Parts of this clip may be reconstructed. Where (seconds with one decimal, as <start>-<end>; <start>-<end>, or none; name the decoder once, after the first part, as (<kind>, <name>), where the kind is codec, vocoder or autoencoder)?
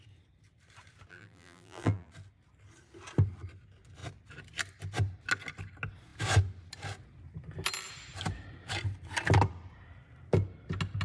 1.1-2.1 (vocoder, BigVGAN v2)